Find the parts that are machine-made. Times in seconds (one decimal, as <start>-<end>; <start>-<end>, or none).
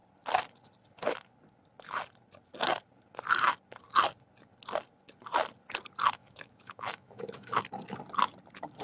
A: 6.2-7.6